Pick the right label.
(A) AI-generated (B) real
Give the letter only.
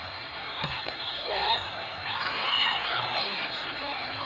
A